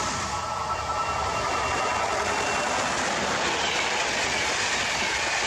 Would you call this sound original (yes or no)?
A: yes